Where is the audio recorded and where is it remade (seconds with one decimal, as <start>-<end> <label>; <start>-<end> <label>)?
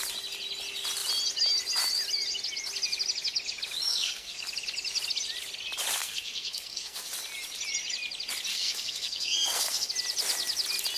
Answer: 0.0-3.9 recorded; 3.9-4.4 remade; 4.4-6.0 recorded; 6.0-7.1 remade; 7.1-8.5 recorded; 8.5-9.9 remade; 9.9-11.0 recorded